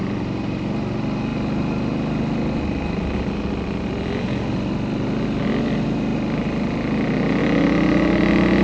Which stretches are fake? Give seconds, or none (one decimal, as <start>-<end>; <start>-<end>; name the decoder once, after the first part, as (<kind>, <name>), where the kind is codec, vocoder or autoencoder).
none